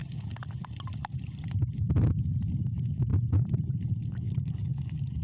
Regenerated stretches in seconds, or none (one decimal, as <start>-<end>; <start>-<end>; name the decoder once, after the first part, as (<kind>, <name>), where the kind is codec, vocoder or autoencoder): 2.6-3.1 (autoencoder, DAC-VAE); 4.1-5.2